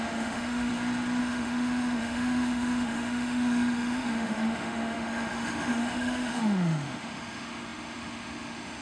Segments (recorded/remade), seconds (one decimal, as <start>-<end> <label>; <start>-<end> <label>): 0.0-0.7 remade; 0.7-1.2 recorded; 1.2-8.8 remade